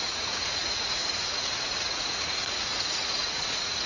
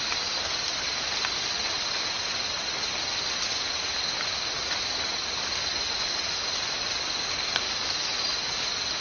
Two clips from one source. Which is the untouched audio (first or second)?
second